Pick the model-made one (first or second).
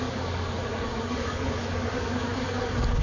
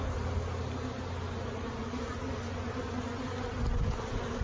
first